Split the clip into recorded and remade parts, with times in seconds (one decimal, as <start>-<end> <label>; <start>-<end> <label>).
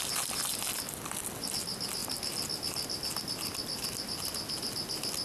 0.0-5.2 recorded